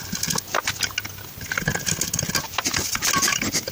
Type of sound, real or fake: real